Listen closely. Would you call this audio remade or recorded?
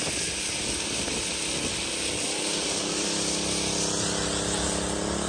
recorded